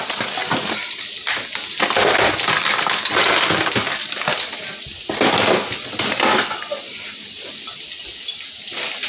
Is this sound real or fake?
real